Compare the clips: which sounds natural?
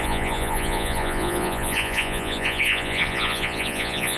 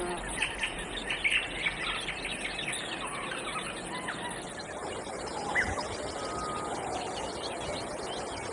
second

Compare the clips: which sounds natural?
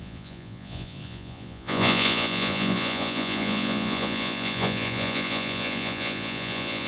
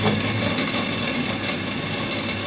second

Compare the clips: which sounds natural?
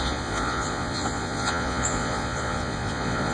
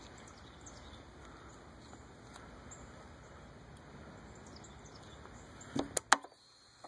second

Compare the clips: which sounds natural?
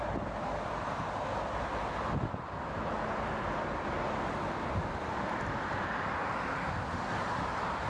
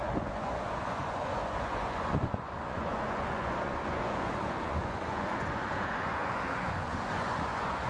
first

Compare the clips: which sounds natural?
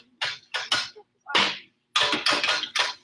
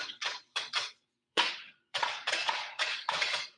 first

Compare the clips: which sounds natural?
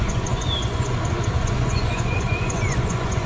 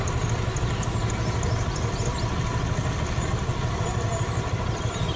second